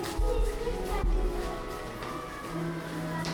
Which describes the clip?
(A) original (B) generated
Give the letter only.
A